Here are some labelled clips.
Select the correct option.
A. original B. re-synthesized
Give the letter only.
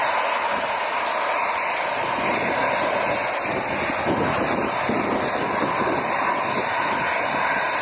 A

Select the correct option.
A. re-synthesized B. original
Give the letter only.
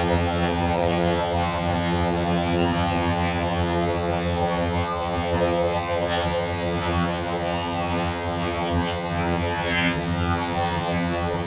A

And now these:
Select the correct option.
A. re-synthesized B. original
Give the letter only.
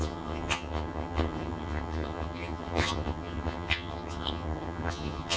A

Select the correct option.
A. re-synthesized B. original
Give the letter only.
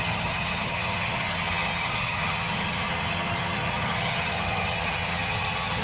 A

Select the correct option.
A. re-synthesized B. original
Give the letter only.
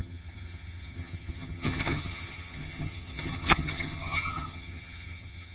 A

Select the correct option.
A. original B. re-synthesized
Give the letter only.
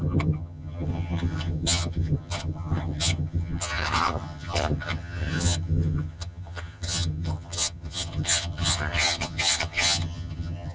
B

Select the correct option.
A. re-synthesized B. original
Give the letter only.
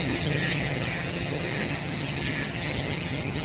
A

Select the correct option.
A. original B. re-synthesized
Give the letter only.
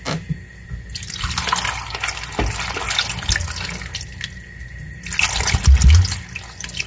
A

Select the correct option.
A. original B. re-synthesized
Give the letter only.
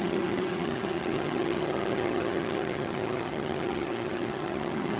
B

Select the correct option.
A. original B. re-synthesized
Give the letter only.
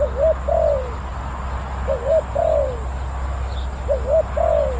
A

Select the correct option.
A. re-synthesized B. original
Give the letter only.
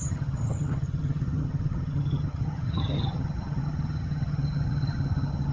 A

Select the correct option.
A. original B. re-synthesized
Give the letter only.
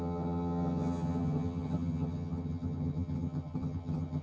B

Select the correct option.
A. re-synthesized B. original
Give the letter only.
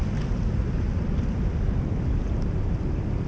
B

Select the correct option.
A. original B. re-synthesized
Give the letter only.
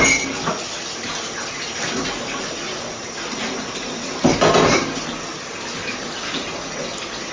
A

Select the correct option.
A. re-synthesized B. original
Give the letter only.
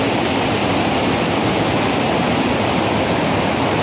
B